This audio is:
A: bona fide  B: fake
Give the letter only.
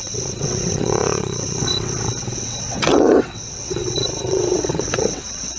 B